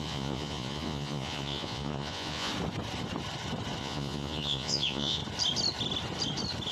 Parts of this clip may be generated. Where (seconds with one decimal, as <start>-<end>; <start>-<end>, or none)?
0.0-2.5; 3.8-5.2